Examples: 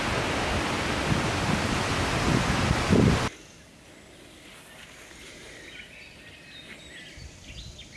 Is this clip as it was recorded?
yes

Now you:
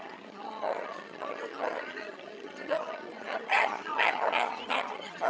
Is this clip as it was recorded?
no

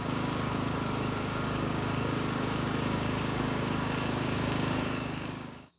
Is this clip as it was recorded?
no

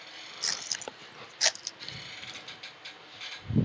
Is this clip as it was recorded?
yes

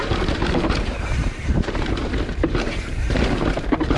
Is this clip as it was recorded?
no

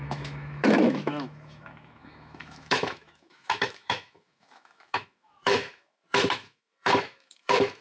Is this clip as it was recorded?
no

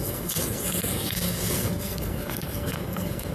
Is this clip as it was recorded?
no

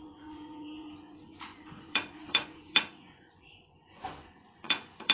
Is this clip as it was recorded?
no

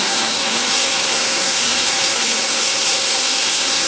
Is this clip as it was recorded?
no